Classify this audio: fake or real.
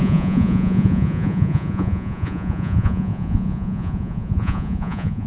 fake